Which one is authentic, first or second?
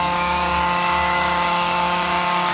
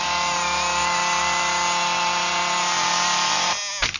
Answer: second